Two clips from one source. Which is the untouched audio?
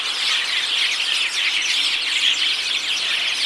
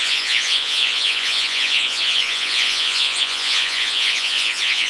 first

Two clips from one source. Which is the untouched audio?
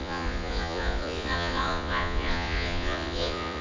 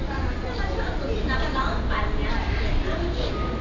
second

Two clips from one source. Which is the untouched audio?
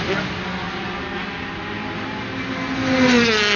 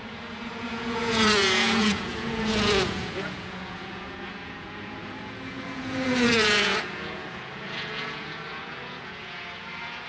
first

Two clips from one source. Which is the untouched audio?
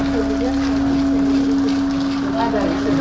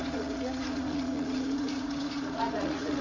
first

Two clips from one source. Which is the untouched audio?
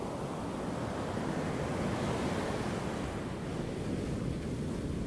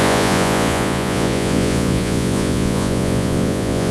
first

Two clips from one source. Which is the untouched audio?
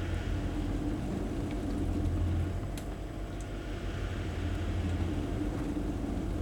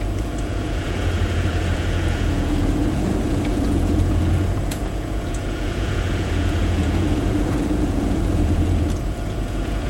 first